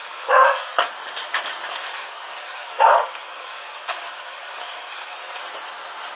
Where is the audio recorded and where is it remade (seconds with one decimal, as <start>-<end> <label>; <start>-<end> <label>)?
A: 0.0-0.9 remade; 0.9-1.7 recorded; 1.7-5.4 remade; 5.4-6.1 recorded